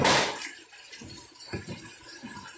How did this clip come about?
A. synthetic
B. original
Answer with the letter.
B